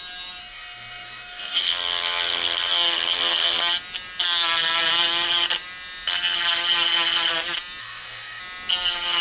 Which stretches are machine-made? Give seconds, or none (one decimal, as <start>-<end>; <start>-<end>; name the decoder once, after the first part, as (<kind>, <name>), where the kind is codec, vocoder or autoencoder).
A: 0.4-1.7 (codec, SNAC); 7.8-8.4